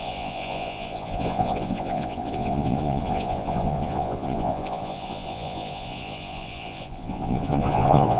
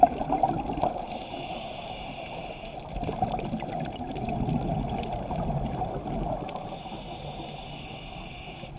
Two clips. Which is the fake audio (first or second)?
first